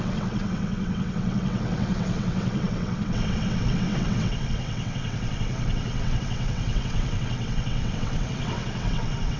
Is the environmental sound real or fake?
fake